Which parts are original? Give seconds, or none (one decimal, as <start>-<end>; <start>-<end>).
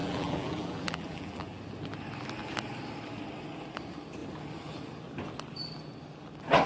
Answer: 1.6-6.7